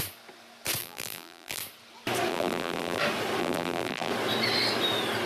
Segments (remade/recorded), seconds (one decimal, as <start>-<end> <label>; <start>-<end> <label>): 0.0-0.8 recorded; 0.8-1.6 remade; 1.6-2.3 recorded; 2.3-3.0 remade; 3.0-3.4 recorded; 3.4-4.1 remade; 4.1-5.3 recorded